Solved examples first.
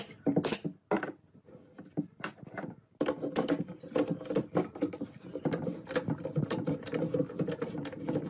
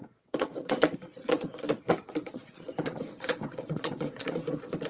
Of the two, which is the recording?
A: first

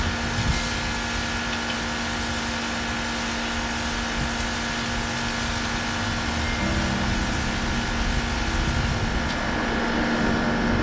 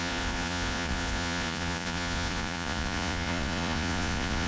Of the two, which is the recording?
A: first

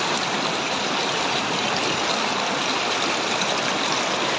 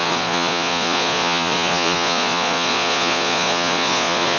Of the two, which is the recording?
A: first